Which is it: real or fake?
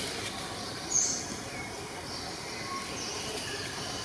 real